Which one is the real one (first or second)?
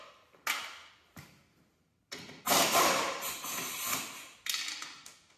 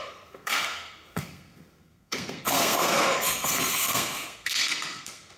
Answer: first